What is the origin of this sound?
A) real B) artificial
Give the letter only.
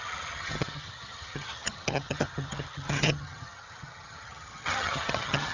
B